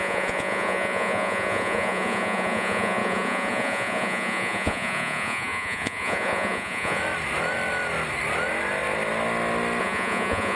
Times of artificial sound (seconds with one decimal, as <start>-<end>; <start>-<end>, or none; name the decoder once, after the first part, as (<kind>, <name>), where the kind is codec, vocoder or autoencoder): 0.0-7.0 (vocoder, Vocos); 9.8-10.6